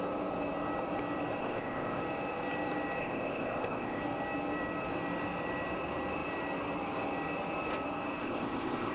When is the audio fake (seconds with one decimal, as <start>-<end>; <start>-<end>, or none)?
1.4-2.0; 3.0-4.0; 8.2-8.9